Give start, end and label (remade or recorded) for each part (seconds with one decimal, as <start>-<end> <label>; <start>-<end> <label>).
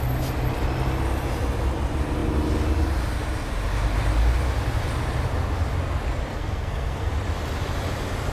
0.0-6.3 recorded; 6.3-7.1 remade; 7.1-8.3 recorded